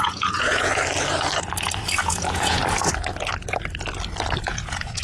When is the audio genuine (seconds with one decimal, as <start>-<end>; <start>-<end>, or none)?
0.7-2.0; 2.6-4.4